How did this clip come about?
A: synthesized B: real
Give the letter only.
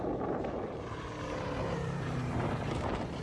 A